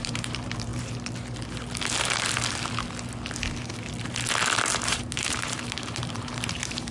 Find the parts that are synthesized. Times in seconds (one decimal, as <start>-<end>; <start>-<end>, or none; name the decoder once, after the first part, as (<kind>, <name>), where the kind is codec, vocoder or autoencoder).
0.0-0.7 (vocoder, BigVGAN v2); 4.8-6.9